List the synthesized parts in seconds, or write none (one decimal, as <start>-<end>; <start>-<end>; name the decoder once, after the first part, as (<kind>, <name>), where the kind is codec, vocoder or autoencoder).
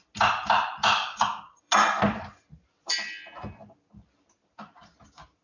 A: 1.0-1.7 (codec, DAC)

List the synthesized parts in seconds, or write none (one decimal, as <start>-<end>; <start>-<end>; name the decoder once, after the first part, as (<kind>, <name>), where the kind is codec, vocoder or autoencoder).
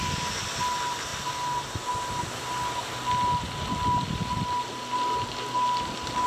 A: none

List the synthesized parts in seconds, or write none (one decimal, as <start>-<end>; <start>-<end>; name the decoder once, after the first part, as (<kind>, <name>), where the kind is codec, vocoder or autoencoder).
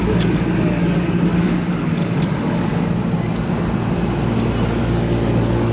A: 0.0-2.7 (codec, DAC); 4.8-5.7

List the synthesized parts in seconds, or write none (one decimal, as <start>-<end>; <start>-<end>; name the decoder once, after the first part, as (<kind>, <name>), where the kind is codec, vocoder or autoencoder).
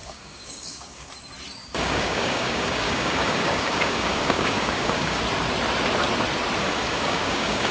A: 0.0-1.1 (codec, DAC); 1.6-5.2; 6.6-7.7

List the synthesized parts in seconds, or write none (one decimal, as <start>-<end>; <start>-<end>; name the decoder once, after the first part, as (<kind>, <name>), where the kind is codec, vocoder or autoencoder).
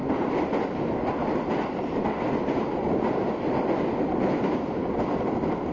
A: none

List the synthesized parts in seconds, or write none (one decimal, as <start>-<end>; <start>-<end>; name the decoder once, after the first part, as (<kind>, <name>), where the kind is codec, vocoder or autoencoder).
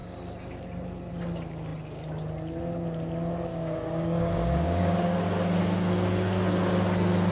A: 3.5-5.2 (codec, DAC)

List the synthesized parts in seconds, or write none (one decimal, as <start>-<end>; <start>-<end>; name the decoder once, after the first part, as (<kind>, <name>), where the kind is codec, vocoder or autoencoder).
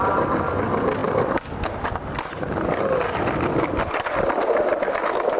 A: none